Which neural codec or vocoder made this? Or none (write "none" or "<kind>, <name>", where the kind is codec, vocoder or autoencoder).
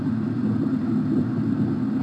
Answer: none